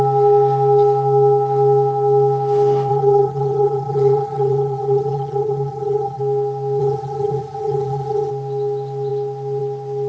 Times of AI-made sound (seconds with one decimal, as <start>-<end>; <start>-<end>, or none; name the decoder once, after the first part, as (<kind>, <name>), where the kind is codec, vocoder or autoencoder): 2.9-6.2 (vocoder, HiFi-GAN); 6.8-8.3